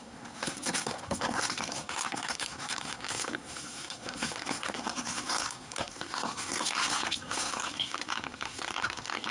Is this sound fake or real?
fake